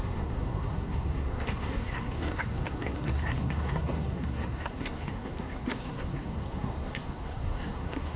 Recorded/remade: remade